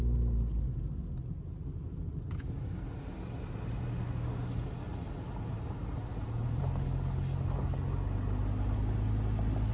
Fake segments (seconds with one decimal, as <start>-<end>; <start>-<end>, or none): 6.1-6.6